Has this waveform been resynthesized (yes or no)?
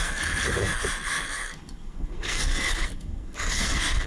yes